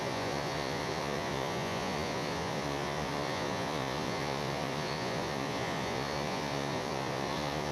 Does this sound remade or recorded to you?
remade